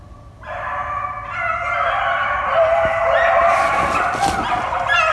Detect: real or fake real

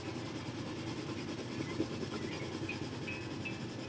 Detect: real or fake real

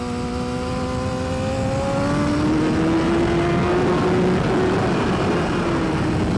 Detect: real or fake real